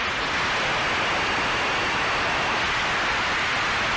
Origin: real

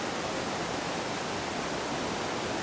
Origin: real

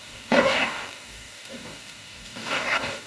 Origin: fake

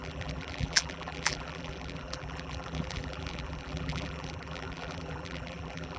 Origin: fake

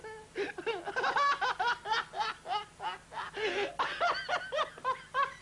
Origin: real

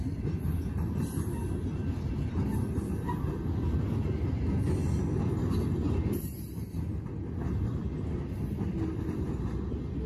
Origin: real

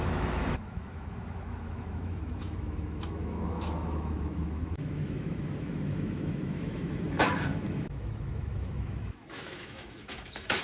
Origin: fake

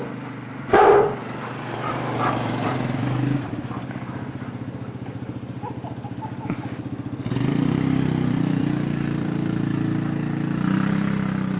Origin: fake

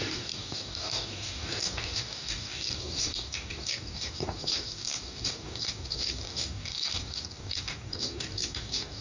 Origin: fake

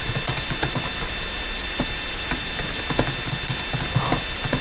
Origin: real